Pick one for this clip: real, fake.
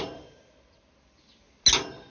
real